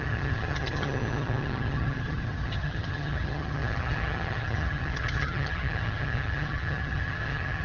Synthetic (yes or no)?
yes